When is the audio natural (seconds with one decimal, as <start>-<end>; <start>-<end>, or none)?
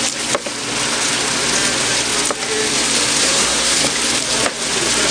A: 0.0-3.2; 3.8-5.1